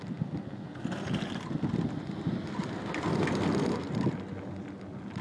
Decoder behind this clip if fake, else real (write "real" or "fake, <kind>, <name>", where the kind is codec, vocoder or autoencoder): real